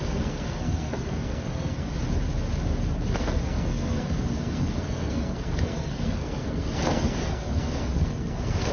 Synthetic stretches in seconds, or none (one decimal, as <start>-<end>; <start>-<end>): 0.0-1.9; 3.2-8.7